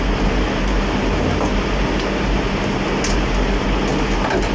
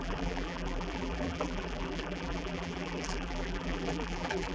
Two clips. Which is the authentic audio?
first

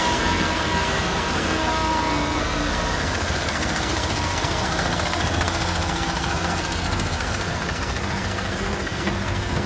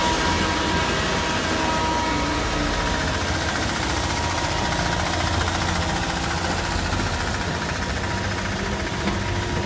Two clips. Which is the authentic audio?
second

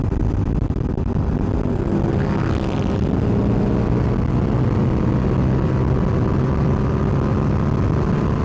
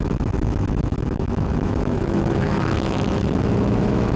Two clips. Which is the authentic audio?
first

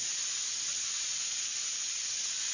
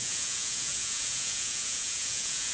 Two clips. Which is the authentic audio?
first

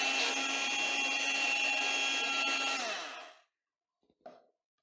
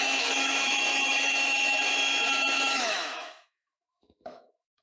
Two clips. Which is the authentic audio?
first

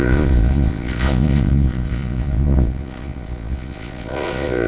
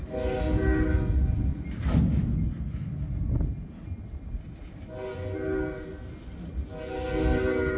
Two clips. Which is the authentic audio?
second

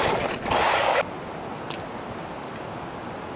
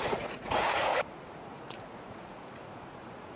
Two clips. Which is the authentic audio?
first